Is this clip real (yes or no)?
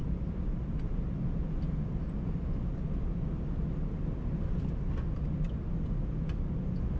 yes